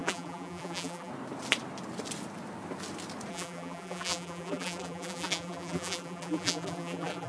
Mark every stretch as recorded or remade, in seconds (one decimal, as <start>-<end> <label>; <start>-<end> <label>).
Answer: 0.0-1.1 remade; 1.1-3.3 recorded; 3.3-7.3 remade